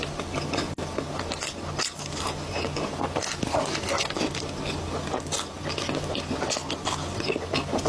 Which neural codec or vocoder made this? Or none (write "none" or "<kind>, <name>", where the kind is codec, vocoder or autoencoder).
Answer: none